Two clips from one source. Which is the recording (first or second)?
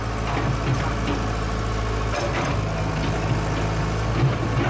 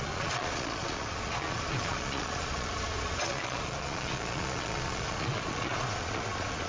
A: first